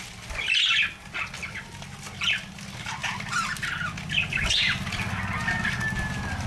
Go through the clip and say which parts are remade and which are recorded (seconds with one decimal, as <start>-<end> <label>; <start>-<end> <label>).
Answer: 0.0-6.5 recorded